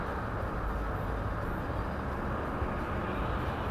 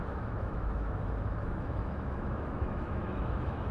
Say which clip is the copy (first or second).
second